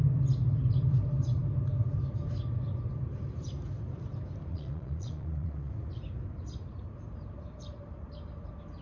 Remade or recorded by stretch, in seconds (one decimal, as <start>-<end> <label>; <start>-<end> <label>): 0.0-4.5 recorded; 4.5-5.7 remade; 5.7-8.8 recorded